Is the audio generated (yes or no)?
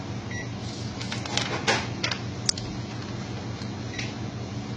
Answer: no